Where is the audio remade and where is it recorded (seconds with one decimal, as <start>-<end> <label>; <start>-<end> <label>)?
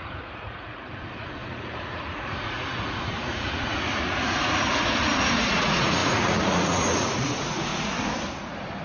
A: 0.0-7.7 remade; 7.7-8.8 recorded